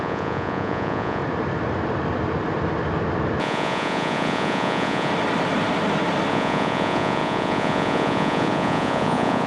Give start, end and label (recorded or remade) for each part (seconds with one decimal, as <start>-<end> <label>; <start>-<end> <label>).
0.0-1.2 remade; 1.2-3.4 recorded; 3.4-5.1 remade; 5.1-6.3 recorded; 6.3-9.5 remade